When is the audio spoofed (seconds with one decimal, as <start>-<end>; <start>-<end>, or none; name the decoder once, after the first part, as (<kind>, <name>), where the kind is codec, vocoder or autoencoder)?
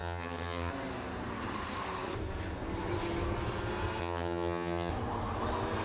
0.0-0.7 (vocoder, HiFi-GAN); 4.0-4.9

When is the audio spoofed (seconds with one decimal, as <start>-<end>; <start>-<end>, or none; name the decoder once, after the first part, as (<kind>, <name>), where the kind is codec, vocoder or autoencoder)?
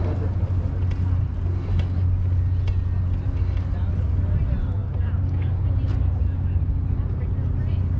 none